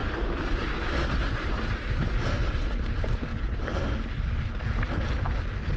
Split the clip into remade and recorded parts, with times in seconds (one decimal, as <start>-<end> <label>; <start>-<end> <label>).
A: 0.0-5.8 recorded